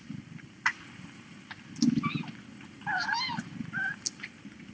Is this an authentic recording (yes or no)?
yes